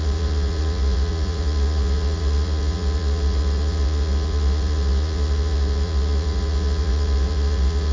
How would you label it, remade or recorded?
remade